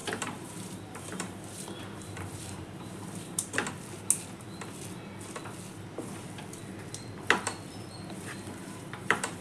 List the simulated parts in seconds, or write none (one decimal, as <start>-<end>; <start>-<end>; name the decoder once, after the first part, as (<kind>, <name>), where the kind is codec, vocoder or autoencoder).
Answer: 0.0-3.6 (vocoder, BigVGAN v2); 8.0-9.4